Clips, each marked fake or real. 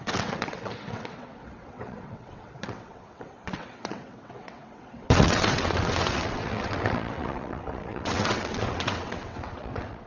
fake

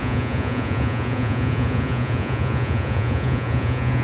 fake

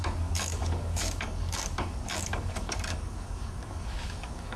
fake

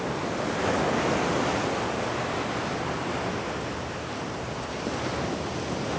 real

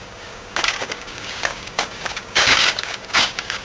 fake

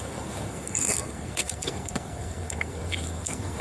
fake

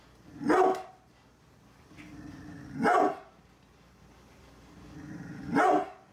real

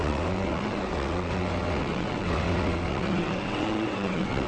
fake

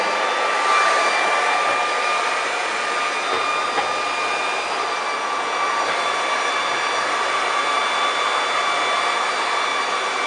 real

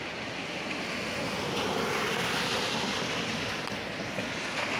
real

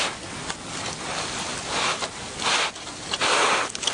real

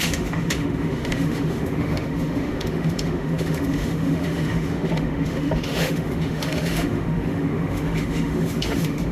fake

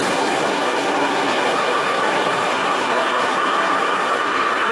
fake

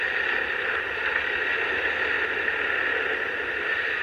real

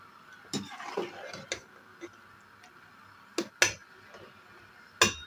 real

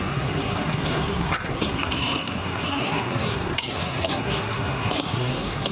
fake